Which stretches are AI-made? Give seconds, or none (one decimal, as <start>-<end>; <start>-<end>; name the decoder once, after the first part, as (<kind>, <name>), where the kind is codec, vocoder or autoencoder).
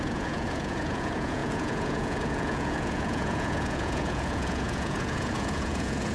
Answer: 0.0-6.1 (vocoder, Vocos)